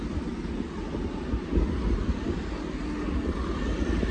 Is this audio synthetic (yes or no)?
no